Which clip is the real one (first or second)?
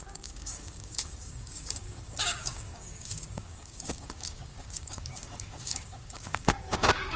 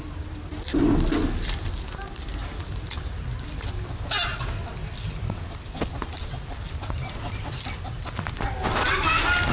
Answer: second